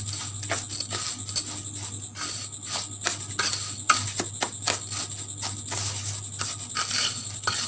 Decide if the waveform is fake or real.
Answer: real